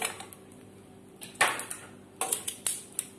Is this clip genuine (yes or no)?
yes